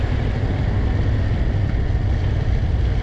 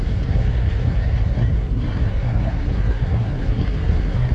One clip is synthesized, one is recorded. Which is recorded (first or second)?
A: first